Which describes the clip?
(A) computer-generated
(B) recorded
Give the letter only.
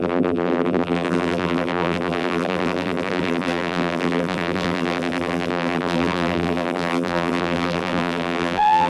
A